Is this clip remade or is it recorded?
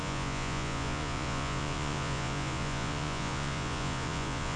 remade